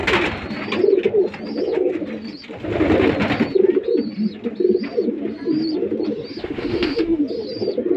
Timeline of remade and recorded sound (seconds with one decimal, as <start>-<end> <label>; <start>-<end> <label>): 0.0-6.4 recorded; 6.4-7.2 remade; 7.2-8.0 recorded